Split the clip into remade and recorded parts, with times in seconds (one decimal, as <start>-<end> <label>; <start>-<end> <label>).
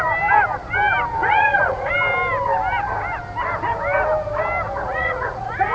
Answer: 0.0-1.2 recorded; 1.2-1.9 remade; 1.9-4.9 recorded; 4.9-5.7 remade